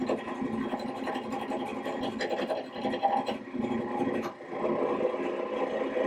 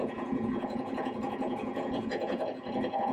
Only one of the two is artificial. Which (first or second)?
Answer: second